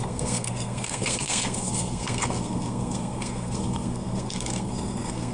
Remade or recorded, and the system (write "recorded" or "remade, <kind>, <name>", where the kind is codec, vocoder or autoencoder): remade, codec, SNAC